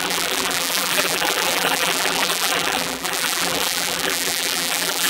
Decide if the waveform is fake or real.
fake